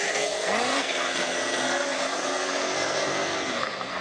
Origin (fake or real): fake